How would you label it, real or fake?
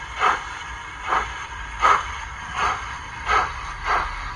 fake